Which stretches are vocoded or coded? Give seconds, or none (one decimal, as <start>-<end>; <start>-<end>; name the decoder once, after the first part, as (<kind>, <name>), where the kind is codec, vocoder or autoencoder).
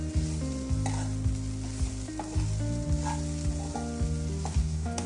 4.6-5.1 (codec, DAC)